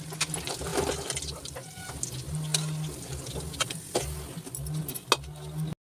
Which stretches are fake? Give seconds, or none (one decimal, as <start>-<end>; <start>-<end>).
none